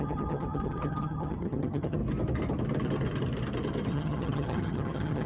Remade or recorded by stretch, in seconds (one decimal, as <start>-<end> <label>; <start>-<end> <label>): 0.0-2.0 remade; 2.0-3.9 recorded; 3.9-5.3 remade